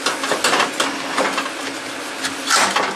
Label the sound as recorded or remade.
recorded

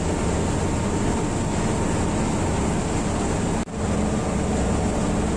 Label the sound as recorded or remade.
recorded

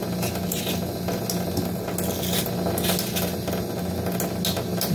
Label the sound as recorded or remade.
recorded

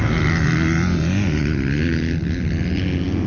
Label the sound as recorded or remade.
recorded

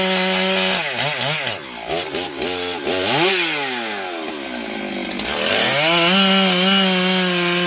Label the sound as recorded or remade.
recorded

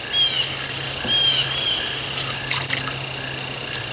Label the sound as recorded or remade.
recorded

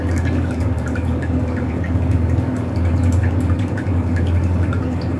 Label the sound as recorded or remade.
remade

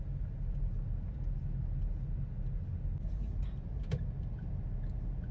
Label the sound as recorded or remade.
recorded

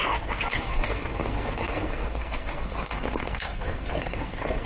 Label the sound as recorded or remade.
remade